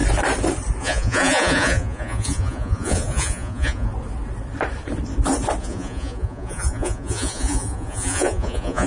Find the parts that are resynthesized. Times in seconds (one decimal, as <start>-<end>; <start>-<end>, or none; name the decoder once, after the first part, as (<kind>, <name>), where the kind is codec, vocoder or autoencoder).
0.8-3.9 (vocoder, Vocos); 5.6-8.9